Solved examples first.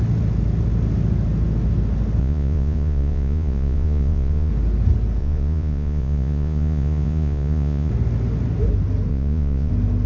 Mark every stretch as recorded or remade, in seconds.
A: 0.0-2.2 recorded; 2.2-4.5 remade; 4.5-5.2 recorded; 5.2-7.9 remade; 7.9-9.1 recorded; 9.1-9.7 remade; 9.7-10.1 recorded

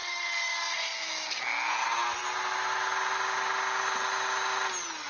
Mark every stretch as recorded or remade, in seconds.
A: 0.0-5.1 recorded

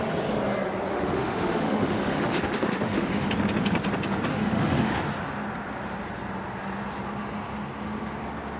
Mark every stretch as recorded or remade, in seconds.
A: 0.0-0.9 recorded; 0.9-3.3 remade; 3.3-4.3 recorded; 4.3-4.9 remade; 4.9-8.6 recorded

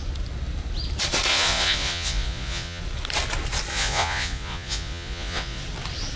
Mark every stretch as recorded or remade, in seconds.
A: 0.0-1.3 recorded; 1.3-2.8 remade; 2.8-3.7 recorded; 3.7-5.6 remade; 5.6-6.2 recorded

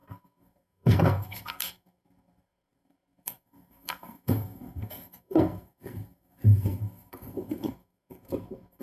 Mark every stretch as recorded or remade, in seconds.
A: 0.0-8.8 remade

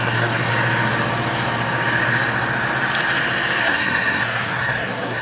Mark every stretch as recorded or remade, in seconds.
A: 0.0-0.5 remade; 0.5-3.6 recorded; 3.6-5.2 remade